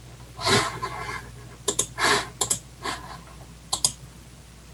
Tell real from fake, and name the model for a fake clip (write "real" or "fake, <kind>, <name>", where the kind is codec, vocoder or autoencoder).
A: real